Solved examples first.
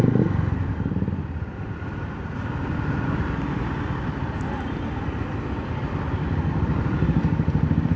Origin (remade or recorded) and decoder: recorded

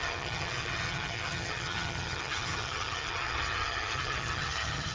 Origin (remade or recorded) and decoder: remade, vocoder, HiFi-GAN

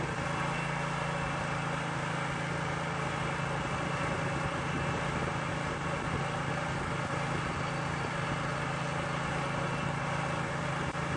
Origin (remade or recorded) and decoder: recorded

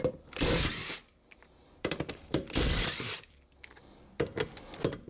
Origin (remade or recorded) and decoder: remade, vocoder, BigVGAN v2